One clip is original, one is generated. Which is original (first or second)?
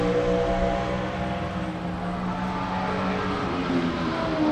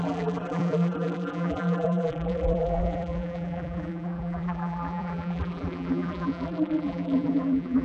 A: first